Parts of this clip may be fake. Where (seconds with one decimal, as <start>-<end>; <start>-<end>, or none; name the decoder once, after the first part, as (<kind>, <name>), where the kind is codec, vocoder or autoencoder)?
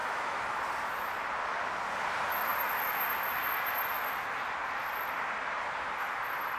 0.0-0.6 (autoencoder, DAC-VAE)